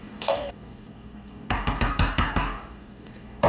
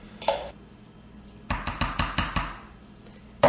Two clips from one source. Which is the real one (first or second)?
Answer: second